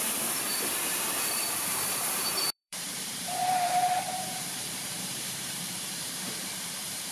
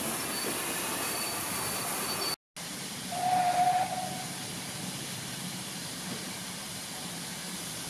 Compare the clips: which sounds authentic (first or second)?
second